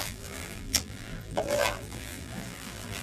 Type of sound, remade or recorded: remade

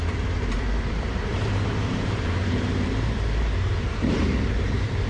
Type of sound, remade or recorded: remade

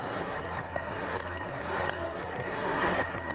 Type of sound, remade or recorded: remade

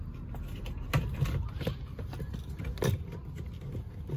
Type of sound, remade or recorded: recorded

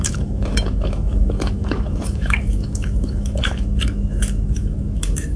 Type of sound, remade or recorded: remade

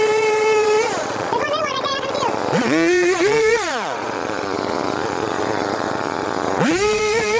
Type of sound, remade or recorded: remade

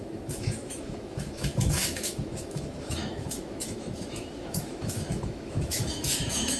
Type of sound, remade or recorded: remade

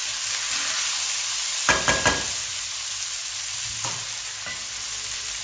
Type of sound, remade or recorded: recorded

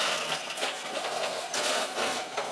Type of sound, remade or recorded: remade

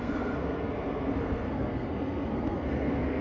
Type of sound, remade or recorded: remade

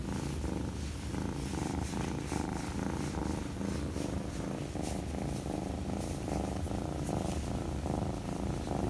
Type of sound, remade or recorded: recorded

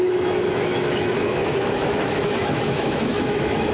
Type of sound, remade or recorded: remade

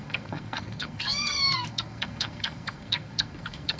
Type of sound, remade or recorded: remade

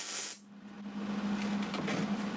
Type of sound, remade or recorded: recorded